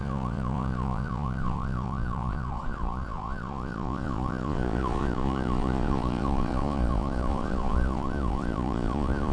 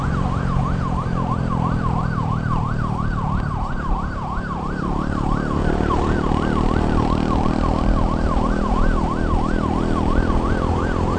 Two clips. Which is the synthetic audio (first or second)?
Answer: first